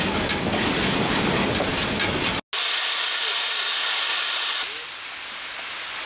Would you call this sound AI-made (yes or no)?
no